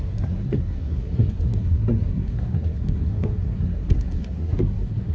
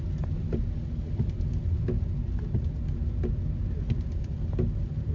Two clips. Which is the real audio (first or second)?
second